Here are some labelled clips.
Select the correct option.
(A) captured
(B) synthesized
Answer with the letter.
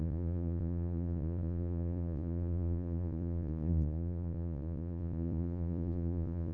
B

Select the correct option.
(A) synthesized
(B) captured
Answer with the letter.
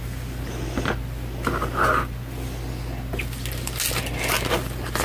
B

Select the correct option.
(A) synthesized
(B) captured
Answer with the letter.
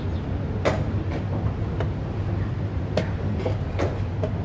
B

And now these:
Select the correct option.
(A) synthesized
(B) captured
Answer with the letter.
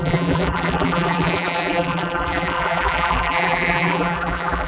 A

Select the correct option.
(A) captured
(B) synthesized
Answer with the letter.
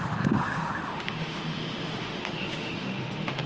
B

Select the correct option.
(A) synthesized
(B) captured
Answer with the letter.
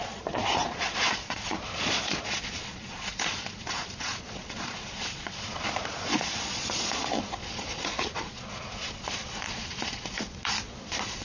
A